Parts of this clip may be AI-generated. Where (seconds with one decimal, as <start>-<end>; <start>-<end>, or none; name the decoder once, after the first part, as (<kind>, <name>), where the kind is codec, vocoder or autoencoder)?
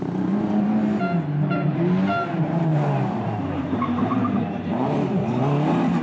0.0-6.0 (vocoder, BigVGAN v2)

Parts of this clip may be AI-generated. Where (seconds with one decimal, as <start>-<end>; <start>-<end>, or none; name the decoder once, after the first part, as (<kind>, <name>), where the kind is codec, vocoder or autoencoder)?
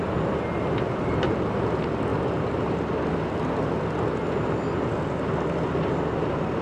0.5-1.3 (vocoder, BigVGAN v2); 2.1-2.8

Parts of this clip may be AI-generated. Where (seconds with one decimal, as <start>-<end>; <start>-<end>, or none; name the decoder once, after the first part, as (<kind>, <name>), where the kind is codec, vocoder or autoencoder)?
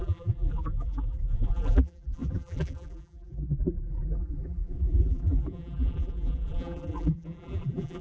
0.0-8.0 (vocoder, BigVGAN v2)